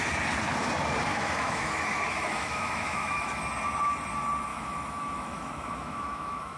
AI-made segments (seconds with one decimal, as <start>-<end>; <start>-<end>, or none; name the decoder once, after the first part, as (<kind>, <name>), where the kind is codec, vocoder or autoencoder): 1.1-3.4 (autoencoder, DAC-VAE); 4.5-6.6